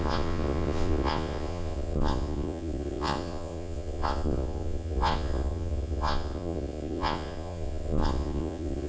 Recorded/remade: remade